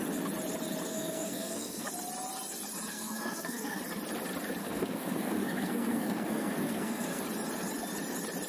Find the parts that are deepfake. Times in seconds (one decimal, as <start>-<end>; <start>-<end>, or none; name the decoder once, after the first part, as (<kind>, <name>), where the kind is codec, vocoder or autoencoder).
0.9-1.9 (codec, SNAC); 2.9-3.8; 4.6-7.2